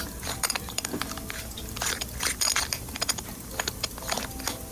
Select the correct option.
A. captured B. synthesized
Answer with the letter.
B